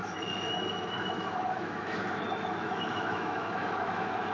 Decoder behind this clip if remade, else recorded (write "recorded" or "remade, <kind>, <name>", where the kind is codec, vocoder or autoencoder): remade, autoencoder, DAC-VAE